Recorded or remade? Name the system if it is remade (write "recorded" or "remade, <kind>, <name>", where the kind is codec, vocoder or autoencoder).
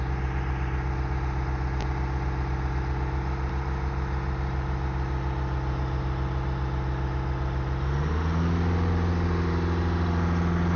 recorded